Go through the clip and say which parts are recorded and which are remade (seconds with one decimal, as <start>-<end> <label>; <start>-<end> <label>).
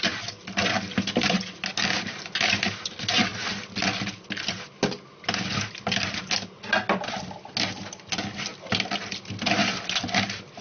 0.0-10.6 recorded